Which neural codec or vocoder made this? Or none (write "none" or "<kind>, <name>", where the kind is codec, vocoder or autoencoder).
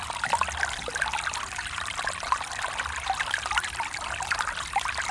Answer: none